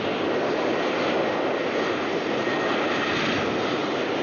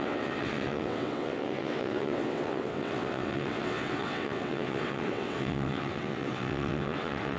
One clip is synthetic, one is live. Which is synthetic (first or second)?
second